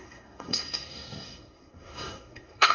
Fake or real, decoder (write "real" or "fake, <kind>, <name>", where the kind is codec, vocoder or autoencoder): fake, codec, SNAC